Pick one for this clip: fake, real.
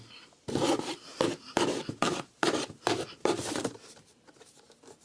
fake